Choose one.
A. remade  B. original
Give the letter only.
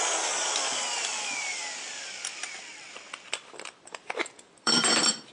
A